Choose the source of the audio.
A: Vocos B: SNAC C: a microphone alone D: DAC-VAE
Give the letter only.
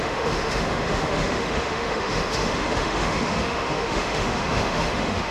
D